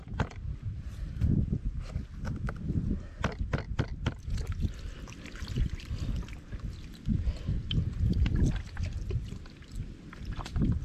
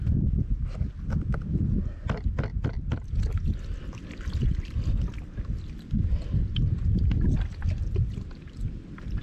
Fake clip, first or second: first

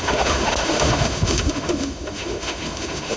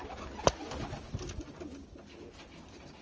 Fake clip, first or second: first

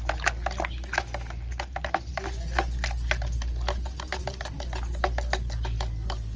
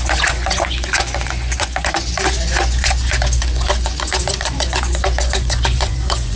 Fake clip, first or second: second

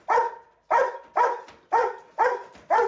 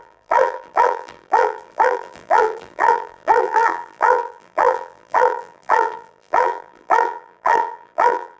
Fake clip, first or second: second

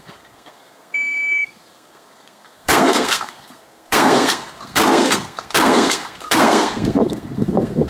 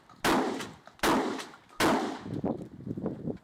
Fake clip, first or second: first